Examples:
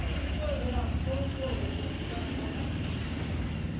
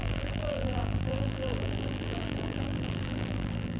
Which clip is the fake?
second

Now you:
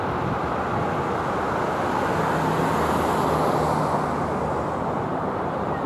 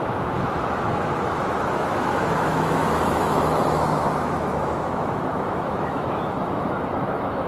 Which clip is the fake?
second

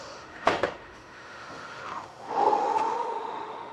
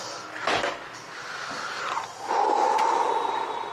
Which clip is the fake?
first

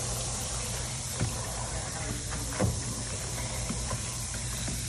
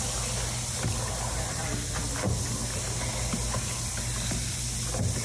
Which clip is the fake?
first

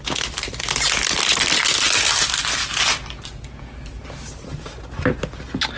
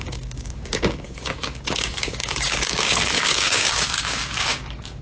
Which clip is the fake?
second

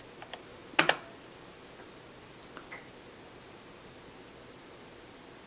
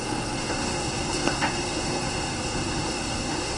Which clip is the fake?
second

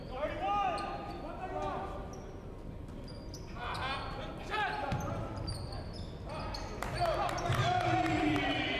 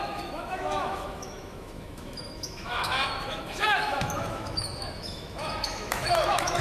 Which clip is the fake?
second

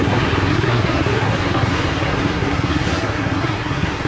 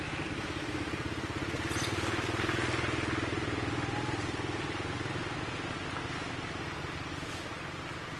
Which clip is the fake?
first